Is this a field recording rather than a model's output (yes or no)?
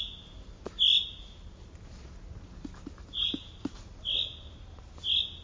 yes